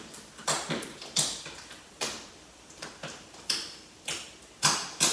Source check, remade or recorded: remade